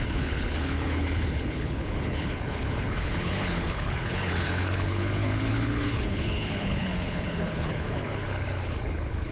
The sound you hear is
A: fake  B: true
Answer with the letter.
A